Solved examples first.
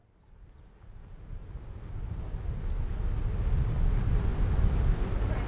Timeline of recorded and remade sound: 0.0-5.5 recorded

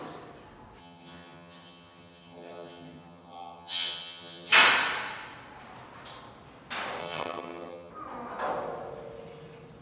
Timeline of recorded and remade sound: 0.0-0.8 recorded; 0.8-4.5 remade; 4.5-7.0 recorded; 7.0-7.9 remade; 7.9-9.8 recorded

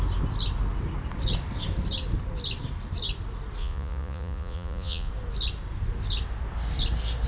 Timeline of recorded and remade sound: 0.0-3.6 recorded; 3.6-5.1 remade; 5.1-7.3 recorded

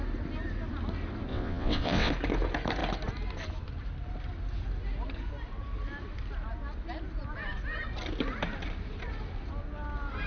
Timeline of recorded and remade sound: 0.0-1.3 recorded; 1.3-2.1 remade; 2.1-10.3 recorded

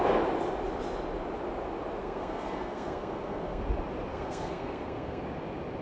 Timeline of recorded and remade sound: 0.0-2.0 recorded; 2.0-3.6 remade; 3.6-4.1 recorded; 4.1-5.2 remade; 5.2-5.8 recorded

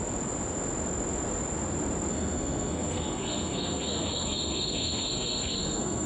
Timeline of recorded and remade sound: 0.0-2.1 recorded; 2.1-6.1 remade

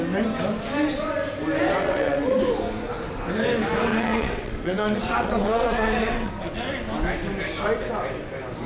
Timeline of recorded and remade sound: 0.0-1.8 recorded; 1.8-2.4 remade; 2.4-3.9 recorded; 3.9-6.3 remade; 6.3-8.7 recorded

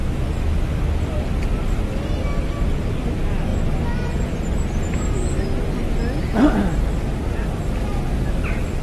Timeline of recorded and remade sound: 0.0-8.8 recorded